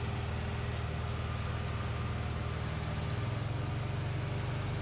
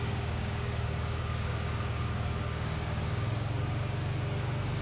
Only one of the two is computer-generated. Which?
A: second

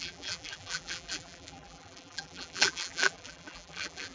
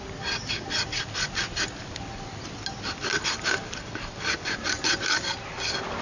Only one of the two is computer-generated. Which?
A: first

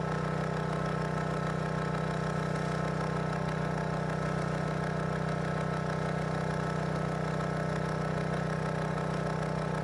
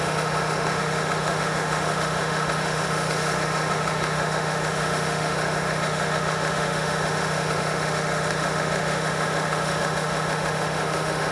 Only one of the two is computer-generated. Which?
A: second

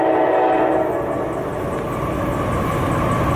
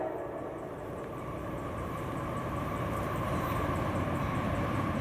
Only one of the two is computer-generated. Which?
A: second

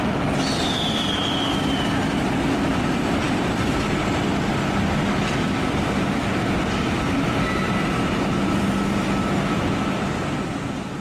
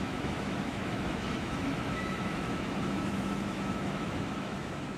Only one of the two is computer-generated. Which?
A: second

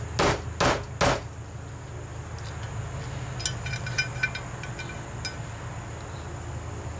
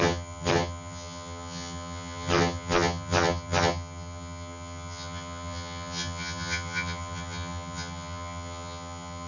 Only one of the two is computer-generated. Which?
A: second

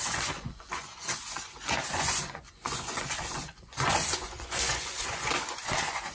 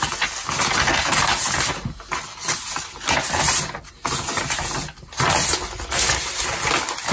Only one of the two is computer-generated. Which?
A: first